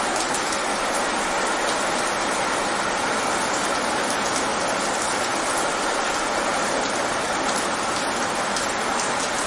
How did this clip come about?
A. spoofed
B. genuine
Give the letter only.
B